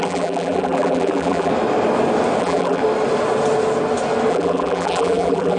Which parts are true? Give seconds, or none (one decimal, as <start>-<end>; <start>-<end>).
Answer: 1.5-2.4; 2.8-4.3